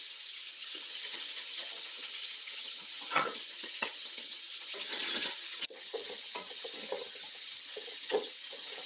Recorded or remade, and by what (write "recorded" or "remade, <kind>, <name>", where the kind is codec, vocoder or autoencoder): remade, vocoder, HiFi-GAN